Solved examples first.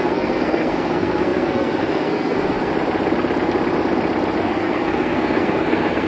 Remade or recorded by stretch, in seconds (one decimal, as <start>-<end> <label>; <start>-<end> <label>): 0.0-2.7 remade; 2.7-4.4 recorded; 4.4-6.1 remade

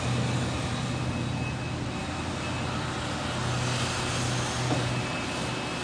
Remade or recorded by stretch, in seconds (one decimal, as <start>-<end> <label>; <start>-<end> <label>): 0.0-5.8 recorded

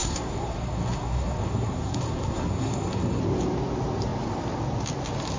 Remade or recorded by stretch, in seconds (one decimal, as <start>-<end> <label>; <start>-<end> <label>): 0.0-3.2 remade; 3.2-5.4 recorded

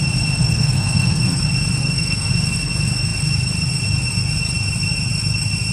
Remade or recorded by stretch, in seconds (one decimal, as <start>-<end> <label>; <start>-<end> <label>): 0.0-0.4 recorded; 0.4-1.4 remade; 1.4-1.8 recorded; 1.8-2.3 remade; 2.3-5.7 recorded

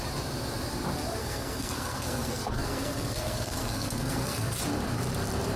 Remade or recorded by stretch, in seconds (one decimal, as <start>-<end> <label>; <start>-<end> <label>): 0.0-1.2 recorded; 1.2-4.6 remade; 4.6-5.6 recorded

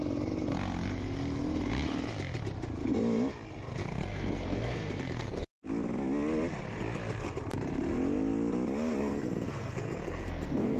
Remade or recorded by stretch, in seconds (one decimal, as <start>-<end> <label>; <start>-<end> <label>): 0.0-3.8 recorded; 3.8-5.6 remade; 5.6-9.0 recorded; 9.0-10.8 remade

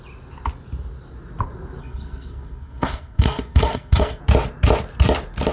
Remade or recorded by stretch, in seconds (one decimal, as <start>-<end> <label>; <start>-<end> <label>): 0.0-1.8 recorded; 1.8-4.2 remade; 4.2-5.5 recorded